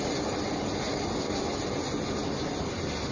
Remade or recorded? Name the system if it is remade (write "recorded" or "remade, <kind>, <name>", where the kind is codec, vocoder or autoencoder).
recorded